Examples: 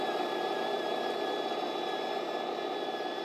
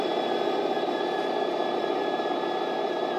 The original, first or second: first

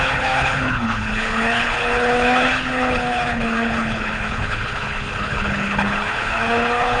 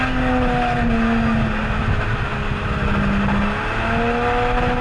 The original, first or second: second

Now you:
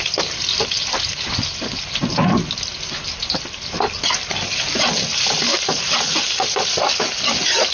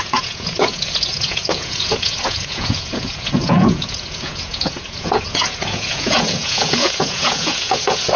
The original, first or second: first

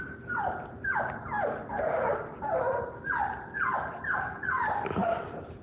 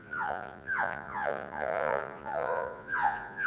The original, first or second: first